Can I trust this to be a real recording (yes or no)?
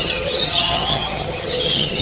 no